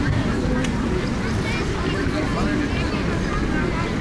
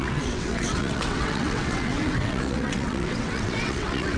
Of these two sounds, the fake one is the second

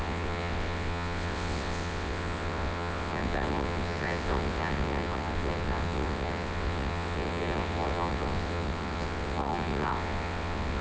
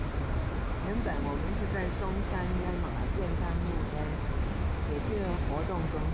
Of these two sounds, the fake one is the first